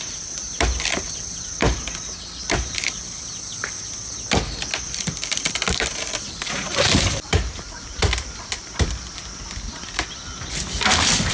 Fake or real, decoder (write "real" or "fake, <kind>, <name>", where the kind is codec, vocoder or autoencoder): fake, vocoder, BigVGAN v2